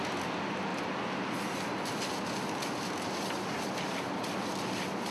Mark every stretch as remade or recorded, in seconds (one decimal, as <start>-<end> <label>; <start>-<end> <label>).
0.0-5.1 recorded